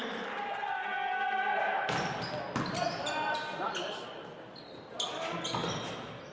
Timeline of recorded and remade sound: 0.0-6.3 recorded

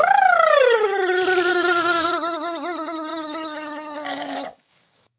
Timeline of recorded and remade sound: 0.0-1.5 recorded; 1.5-2.1 remade; 2.1-3.1 recorded; 3.1-5.2 remade

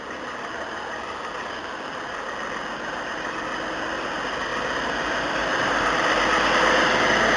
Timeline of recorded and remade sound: 0.0-7.4 recorded

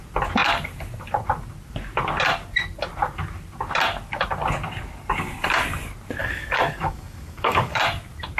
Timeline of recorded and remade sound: 0.0-6.2 recorded; 6.2-7.8 remade; 7.8-8.4 recorded

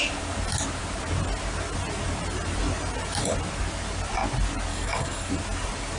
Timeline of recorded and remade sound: 0.0-4.7 recorded; 4.7-5.3 remade; 5.3-6.0 recorded

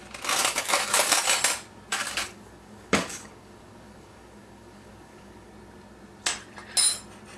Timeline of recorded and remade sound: 0.0-0.4 recorded; 0.4-1.2 remade; 1.2-1.9 recorded; 1.9-5.5 remade; 5.5-7.4 recorded

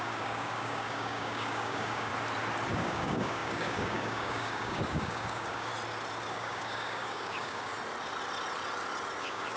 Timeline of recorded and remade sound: 0.0-2.1 remade; 2.1-2.7 recorded; 2.7-5.7 remade; 5.7-6.3 recorded; 6.3-7.7 remade; 7.7-9.2 recorded; 9.2-9.6 remade